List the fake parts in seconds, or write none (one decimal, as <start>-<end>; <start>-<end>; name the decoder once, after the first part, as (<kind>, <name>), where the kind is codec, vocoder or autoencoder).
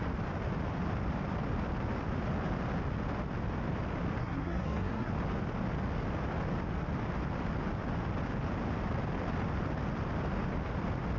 4.2-5.1 (codec, SNAC)